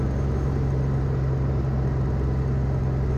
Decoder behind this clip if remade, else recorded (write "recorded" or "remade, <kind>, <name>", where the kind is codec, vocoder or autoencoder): recorded